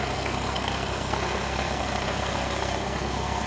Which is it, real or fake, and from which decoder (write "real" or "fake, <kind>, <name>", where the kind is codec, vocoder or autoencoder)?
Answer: fake, codec, SNAC